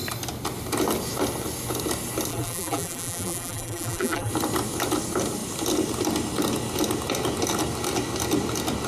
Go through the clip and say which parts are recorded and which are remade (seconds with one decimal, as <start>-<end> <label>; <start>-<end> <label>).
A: 0.0-2.3 recorded; 2.3-4.3 remade; 4.3-8.9 recorded